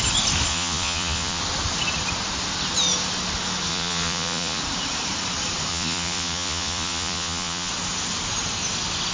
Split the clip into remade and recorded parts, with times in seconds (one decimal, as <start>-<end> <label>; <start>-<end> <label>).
0.0-0.5 recorded; 0.5-1.4 remade; 1.4-3.7 recorded; 3.7-4.6 remade; 4.6-5.7 recorded; 5.7-7.7 remade; 7.7-9.1 recorded